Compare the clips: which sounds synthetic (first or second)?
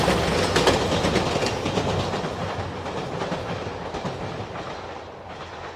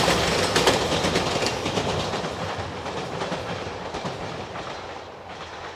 second